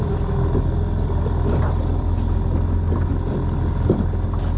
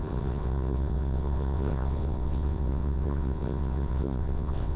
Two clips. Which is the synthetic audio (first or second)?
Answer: second